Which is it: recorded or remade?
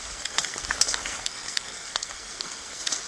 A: remade